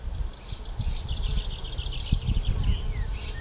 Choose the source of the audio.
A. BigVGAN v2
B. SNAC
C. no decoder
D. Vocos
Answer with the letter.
C